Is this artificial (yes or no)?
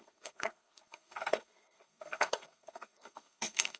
yes